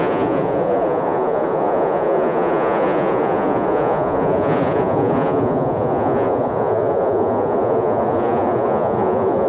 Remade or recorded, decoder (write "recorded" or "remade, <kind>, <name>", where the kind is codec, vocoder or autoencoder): remade, vocoder, Vocos